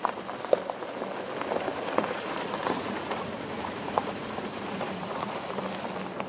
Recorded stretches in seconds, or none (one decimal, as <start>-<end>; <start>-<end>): 0.0-1.7; 5.5-6.3